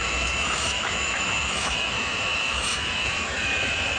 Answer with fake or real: fake